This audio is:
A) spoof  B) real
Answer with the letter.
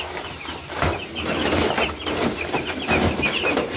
B